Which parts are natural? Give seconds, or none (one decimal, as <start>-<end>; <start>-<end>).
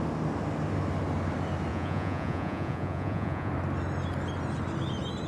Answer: 0.0-1.7; 3.5-5.3